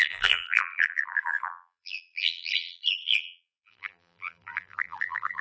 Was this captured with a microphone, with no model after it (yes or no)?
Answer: no